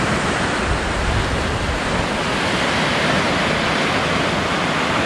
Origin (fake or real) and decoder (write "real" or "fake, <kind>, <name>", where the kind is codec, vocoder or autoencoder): real